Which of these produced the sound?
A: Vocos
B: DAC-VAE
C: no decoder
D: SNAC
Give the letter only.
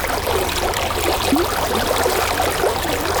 C